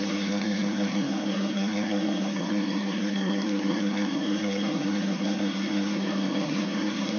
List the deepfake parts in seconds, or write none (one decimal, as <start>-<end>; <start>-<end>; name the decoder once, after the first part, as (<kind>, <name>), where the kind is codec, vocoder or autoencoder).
0.0-7.2 (codec, SNAC)

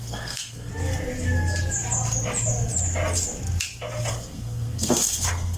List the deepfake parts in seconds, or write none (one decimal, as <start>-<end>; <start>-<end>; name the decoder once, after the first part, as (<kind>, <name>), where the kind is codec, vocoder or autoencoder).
0.0-0.7 (codec, SNAC); 4.1-5.6

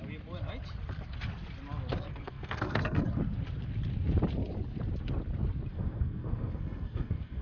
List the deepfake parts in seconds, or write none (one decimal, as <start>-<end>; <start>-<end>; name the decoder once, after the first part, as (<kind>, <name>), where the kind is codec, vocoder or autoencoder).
2.1-3.0 (codec, SNAC); 5.7-7.4

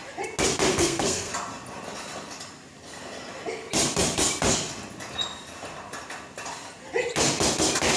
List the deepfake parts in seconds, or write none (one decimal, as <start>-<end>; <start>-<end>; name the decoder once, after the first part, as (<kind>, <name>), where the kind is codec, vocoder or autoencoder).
0.7-1.3 (codec, SNAC)

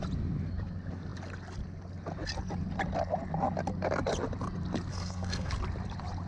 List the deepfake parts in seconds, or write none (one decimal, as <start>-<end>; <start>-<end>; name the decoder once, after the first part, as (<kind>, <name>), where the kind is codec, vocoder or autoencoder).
4.9-5.5 (codec, SNAC)